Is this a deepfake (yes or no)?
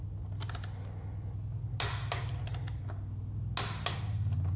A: no